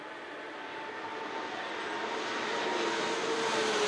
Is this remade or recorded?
recorded